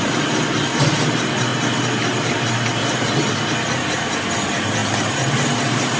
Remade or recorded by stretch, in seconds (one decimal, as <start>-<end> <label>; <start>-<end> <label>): 0.0-6.0 recorded